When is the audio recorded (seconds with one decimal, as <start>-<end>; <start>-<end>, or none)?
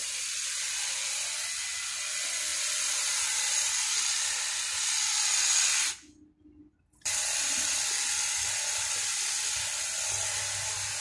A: 0.6-11.0